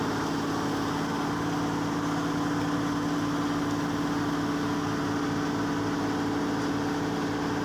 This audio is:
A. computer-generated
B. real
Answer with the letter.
B